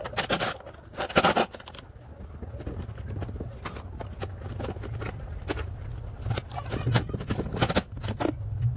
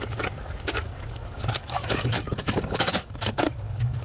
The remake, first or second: second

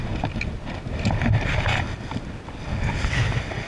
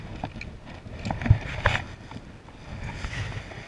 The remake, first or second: first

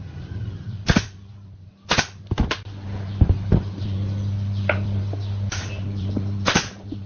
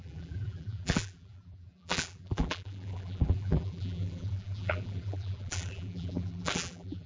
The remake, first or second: second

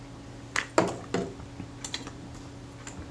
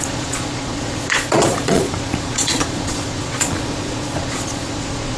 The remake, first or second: second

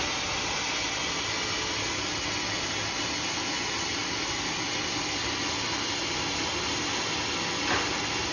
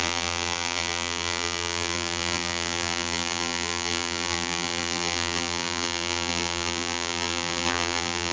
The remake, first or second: second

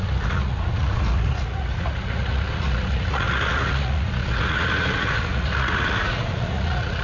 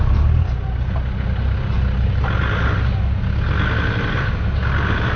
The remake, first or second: first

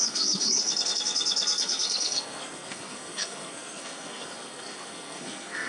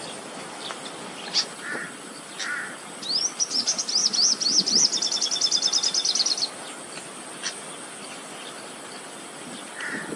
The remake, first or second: first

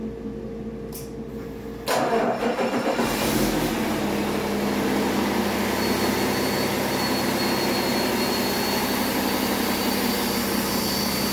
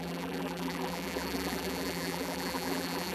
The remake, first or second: second